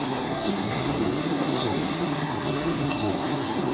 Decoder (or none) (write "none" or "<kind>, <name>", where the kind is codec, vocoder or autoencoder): codec, SNAC